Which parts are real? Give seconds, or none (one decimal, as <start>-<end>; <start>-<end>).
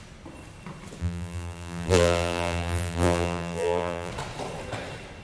0.0-1.0; 4.1-5.2